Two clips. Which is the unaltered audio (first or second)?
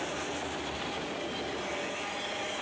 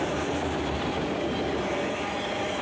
first